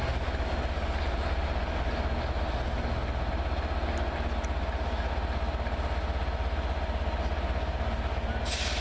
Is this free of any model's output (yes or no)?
yes